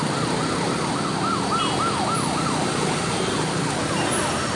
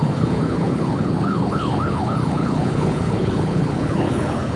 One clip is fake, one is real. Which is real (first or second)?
first